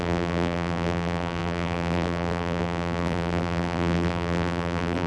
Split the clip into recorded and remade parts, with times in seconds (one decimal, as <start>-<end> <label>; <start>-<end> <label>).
0.0-5.1 remade